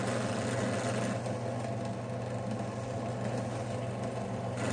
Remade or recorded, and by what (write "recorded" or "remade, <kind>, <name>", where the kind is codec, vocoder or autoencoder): recorded